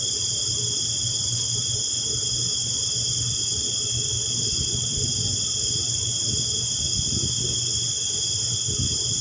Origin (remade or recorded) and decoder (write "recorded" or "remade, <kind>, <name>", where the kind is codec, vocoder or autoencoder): recorded